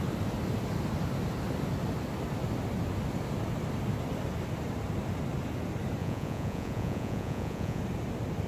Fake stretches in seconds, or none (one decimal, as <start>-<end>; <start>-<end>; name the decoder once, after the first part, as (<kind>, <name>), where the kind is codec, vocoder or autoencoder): 6.0-7.8 (vocoder, Vocos)